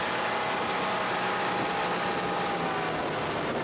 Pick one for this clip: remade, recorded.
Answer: recorded